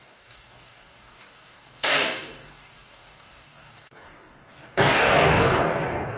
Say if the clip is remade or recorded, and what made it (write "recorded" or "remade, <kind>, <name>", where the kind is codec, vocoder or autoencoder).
remade, codec, DAC